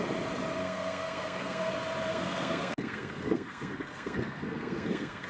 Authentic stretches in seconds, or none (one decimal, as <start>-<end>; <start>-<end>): 0.0-0.6; 1.7-2.1

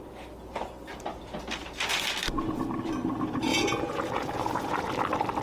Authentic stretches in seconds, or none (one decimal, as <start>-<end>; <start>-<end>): 0.0-3.5; 4.9-5.4

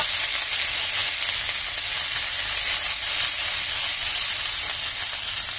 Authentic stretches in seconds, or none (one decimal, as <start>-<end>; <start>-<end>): 0.0-5.6

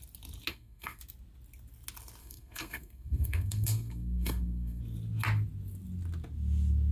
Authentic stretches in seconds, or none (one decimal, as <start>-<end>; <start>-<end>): 0.0-0.5; 1.0-2.2; 4.8-6.9

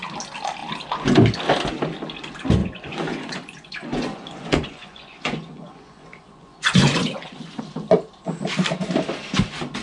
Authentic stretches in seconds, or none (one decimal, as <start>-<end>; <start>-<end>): 0.0-2.6; 7.6-9.8

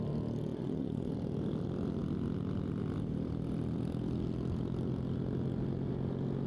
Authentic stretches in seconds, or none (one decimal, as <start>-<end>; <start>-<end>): 0.0-0.5; 1.1-6.5

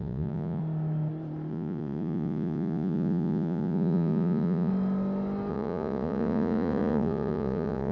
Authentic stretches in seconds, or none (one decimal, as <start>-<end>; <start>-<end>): 0.6-1.5; 4.7-5.5